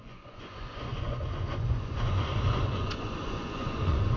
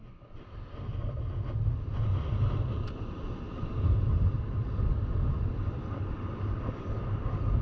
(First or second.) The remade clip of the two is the first